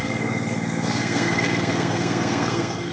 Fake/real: fake